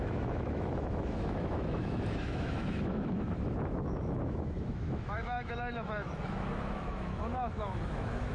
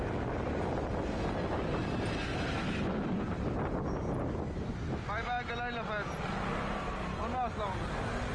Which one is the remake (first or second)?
first